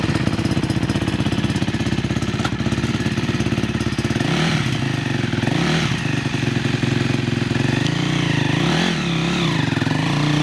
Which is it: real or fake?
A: real